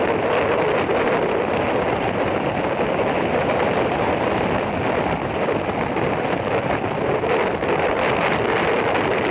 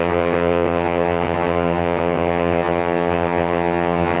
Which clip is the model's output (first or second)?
second